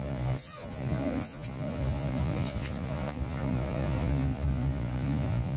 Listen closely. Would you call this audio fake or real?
fake